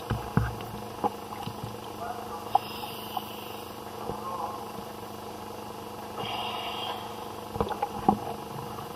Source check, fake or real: real